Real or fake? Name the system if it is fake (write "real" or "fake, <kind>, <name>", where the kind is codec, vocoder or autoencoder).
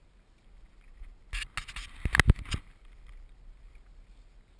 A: real